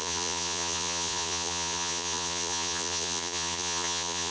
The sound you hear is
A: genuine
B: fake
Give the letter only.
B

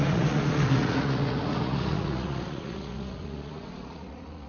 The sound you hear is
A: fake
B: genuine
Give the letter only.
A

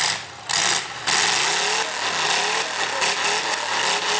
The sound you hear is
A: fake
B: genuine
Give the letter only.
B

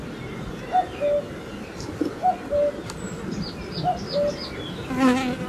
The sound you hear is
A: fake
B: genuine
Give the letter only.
B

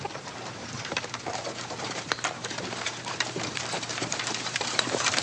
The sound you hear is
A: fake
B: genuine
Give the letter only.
A